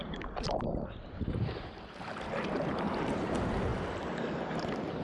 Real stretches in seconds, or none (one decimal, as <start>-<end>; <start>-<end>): 3.7-4.4